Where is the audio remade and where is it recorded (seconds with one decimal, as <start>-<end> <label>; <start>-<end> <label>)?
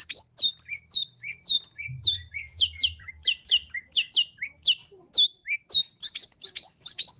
0.0-0.5 recorded; 0.5-4.1 remade; 4.1-7.2 recorded